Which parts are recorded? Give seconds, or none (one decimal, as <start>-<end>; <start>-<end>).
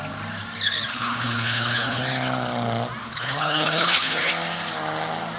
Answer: 0.0-0.9; 2.0-3.0; 4.3-5.4